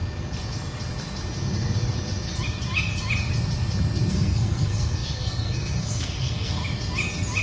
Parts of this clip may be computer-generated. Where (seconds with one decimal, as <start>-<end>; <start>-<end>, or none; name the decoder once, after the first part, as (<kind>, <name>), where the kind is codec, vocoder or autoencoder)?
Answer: 4.1-6.6 (codec, SNAC)